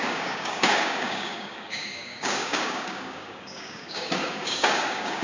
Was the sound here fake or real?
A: fake